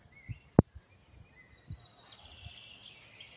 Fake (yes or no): no